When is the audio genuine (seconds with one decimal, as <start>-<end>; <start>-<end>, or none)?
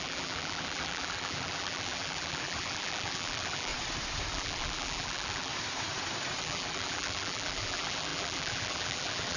3.7-4.3; 5.5-6.4